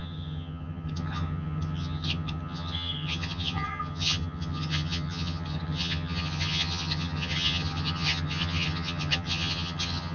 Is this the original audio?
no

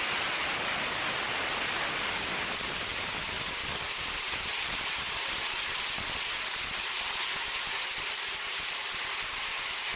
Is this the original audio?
yes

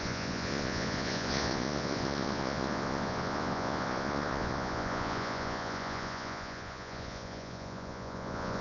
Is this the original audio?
no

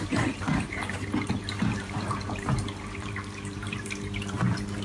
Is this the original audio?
no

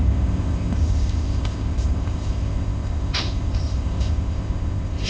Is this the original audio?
no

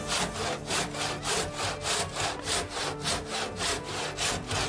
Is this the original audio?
yes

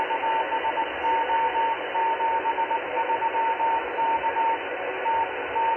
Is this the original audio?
yes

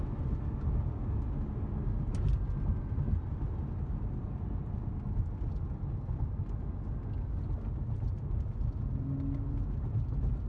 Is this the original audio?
yes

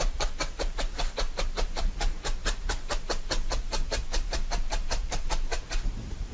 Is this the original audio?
no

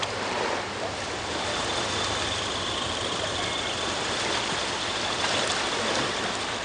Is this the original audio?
yes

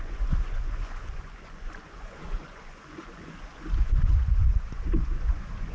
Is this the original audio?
no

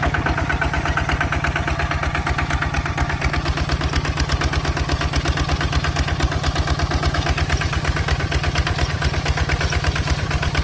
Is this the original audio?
yes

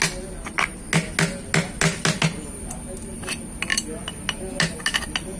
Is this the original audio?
yes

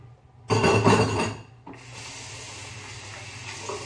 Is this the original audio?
yes